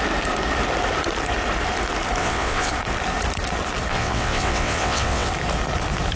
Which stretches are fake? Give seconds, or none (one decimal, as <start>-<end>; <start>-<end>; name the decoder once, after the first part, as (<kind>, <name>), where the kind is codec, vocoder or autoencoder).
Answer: 2.2-2.7 (vocoder, WaveNeXt); 3.9-5.3